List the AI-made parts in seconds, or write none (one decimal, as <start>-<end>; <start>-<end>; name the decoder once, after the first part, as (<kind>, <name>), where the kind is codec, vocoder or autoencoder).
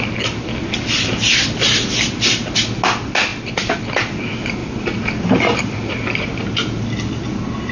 4.6-6.4 (vocoder, BigVGAN v2)